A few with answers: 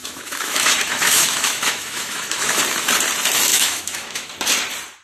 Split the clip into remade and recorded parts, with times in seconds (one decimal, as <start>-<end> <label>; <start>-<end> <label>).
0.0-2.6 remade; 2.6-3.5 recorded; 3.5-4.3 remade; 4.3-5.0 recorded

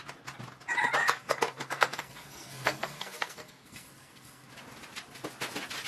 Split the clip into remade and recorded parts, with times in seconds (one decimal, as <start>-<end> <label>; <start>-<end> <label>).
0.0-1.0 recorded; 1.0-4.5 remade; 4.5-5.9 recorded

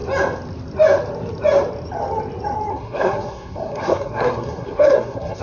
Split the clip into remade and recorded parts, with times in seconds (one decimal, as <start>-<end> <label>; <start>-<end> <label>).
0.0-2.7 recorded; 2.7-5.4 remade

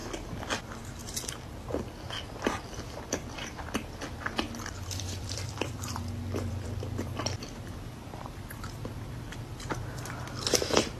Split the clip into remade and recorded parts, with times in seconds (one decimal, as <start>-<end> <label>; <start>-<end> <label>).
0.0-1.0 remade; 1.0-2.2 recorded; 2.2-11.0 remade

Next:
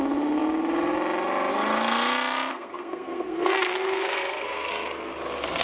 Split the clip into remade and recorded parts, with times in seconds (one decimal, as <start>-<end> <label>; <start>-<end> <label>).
0.0-2.5 recorded; 2.5-4.7 remade; 4.7-5.6 recorded